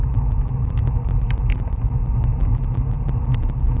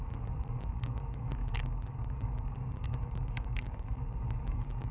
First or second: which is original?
first